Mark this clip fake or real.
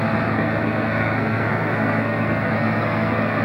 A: fake